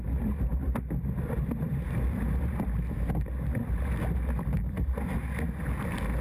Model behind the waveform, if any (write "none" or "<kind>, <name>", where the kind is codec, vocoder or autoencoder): none